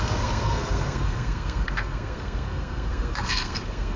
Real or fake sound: fake